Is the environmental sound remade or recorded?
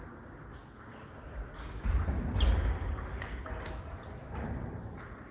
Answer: recorded